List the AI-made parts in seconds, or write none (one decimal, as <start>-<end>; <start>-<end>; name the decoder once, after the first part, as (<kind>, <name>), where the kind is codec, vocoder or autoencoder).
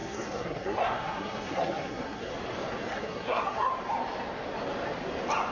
0.0-2.3 (codec, SNAC); 2.9-3.7